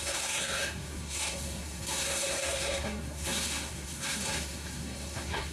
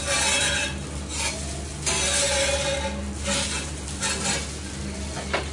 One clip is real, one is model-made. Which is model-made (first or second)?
first